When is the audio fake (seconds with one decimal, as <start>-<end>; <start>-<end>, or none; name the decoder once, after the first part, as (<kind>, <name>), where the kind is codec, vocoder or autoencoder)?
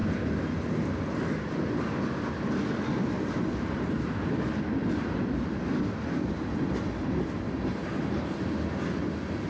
none